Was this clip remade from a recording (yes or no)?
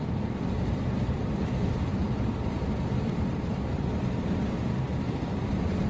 yes